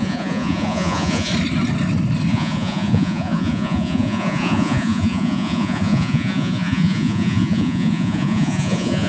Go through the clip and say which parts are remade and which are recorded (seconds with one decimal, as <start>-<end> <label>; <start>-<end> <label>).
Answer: 0.0-1.3 remade; 1.3-2.3 recorded; 2.3-9.1 remade